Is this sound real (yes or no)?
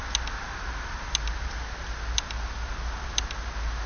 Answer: yes